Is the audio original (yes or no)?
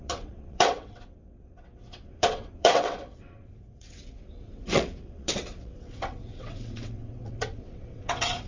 no